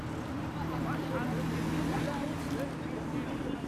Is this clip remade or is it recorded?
recorded